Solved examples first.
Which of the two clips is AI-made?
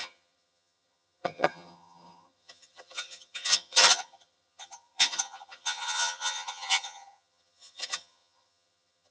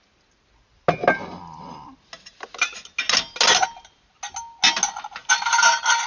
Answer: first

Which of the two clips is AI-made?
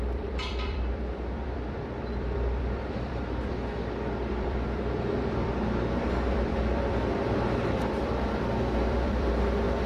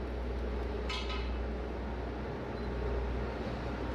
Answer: first